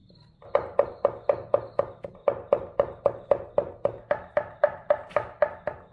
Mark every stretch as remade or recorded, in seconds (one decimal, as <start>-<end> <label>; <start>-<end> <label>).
0.0-5.9 recorded